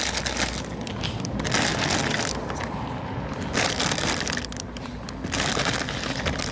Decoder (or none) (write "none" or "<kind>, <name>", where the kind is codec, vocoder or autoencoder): none